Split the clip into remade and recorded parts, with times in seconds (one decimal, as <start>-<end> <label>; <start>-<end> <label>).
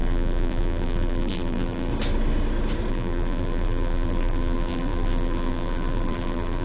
0.0-1.9 remade; 1.9-2.9 recorded; 2.9-6.6 remade